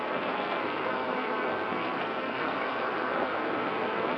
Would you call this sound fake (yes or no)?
yes